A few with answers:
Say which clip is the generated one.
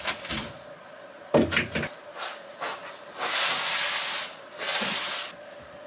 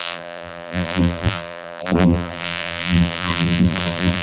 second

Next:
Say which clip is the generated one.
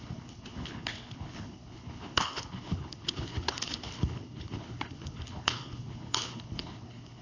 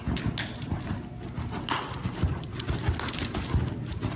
first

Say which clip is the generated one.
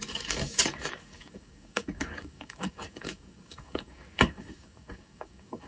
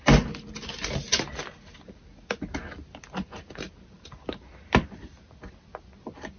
first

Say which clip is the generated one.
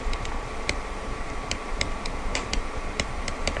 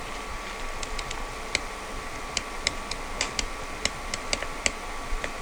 first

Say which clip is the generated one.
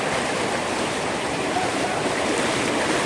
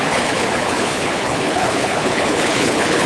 second